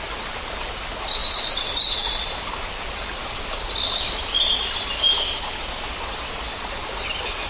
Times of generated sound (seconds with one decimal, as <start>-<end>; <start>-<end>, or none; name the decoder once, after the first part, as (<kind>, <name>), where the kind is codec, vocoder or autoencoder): 1.2-2.7 (vocoder, BigVGAN v2); 3.2-4.3